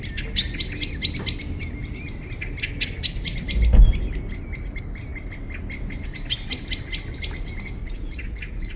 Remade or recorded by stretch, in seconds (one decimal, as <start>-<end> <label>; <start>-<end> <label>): 0.0-7.8 recorded; 7.8-8.8 remade